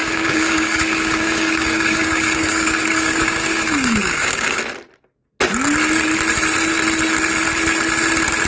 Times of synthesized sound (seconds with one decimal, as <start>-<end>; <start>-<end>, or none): 0.0-4.6